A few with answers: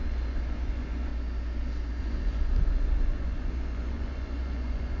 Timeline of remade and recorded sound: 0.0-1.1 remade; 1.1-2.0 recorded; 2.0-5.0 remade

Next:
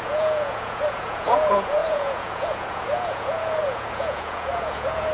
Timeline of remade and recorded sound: 0.0-5.1 remade

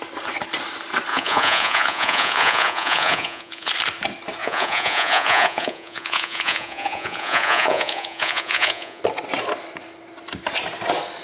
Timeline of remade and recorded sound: 0.0-1.1 recorded; 1.1-3.7 remade; 3.7-4.4 recorded; 4.4-9.0 remade; 9.0-11.2 recorded

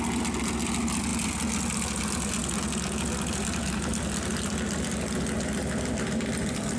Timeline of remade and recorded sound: 0.0-6.8 recorded

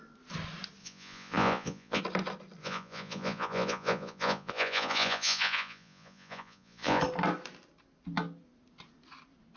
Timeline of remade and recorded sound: 0.0-0.8 recorded; 0.8-2.0 remade; 2.0-2.6 recorded; 2.6-7.0 remade; 7.0-9.6 recorded

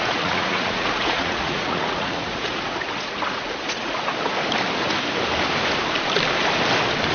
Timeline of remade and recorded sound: 0.0-4.1 remade; 4.1-7.1 recorded

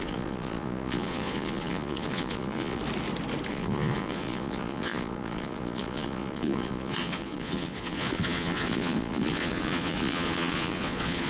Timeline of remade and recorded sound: 0.0-2.8 remade; 2.8-3.5 recorded; 3.5-11.3 remade